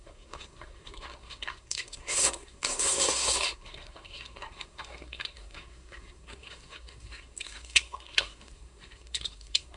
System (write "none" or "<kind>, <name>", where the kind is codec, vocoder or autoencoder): codec, SNAC